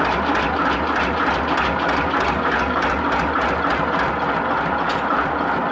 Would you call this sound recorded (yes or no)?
yes